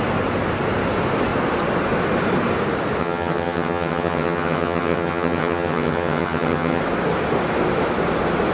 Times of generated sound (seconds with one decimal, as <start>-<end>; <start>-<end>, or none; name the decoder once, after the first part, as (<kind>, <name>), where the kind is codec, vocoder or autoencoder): 3.0-6.8 (vocoder, HiFi-GAN)